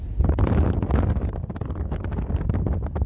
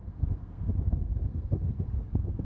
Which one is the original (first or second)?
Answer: first